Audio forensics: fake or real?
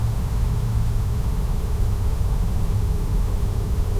fake